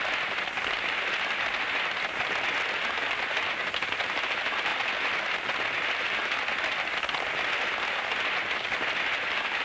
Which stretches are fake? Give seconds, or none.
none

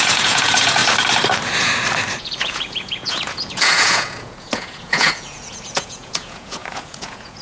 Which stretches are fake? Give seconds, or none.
0.0-0.8 (vocoder, Vocos); 2.2-7.4

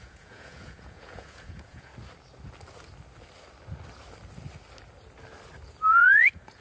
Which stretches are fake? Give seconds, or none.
0.0-1.9 (vocoder, Vocos); 5.9-6.6

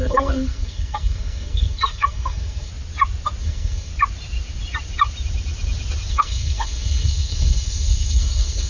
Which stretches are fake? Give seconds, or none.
0.0-2.7 (codec, SNAC); 3.4-3.9; 6.1-8.7

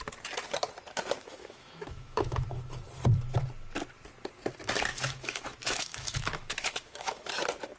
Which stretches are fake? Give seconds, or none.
1.2-2.8 (autoencoder, DAC-VAE); 4.9-7.3

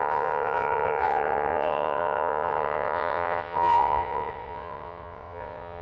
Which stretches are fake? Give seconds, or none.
0.0-5.8 (vocoder, WaveNeXt)

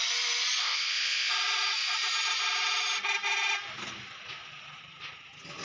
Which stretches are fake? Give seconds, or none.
0.6-1.3 (codec, ZipCodec)

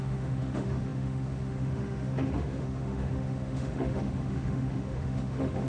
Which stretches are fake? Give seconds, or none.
0.0-5.7 (autoencoder, DAC-VAE)